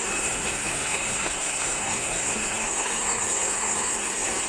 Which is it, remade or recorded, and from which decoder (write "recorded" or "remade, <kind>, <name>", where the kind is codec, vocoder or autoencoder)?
remade, codec, SNAC